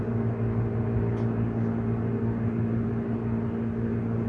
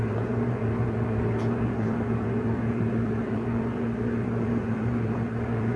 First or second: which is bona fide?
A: first